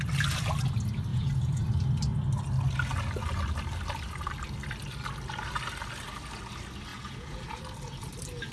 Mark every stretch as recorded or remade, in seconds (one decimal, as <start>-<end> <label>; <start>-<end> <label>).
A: 0.0-1.1 recorded; 1.1-1.7 remade; 1.7-6.9 recorded; 6.9-7.6 remade; 7.6-8.5 recorded